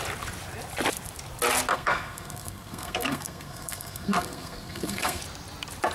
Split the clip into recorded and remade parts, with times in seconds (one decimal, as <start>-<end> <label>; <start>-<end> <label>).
0.0-1.7 recorded; 1.7-5.2 remade; 5.2-5.9 recorded